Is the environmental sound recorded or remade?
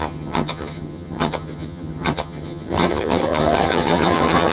remade